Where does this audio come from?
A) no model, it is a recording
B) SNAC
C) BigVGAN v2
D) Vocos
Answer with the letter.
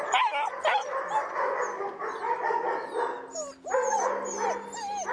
A